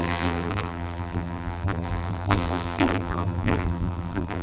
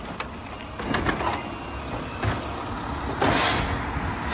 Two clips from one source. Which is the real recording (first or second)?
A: second